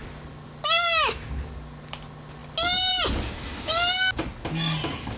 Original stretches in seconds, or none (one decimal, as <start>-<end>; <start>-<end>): 0.0-5.2